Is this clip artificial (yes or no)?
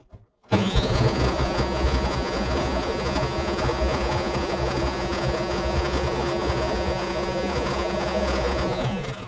yes